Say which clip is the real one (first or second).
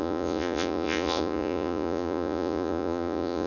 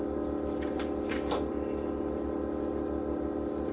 second